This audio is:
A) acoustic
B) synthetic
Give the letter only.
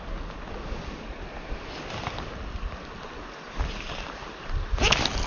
A